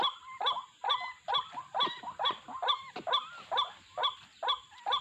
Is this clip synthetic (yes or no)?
no